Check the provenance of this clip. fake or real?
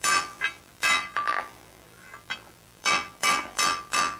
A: fake